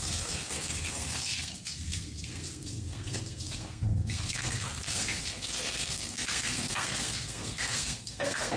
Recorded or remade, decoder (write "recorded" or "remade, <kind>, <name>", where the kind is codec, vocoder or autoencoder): remade, codec, SNAC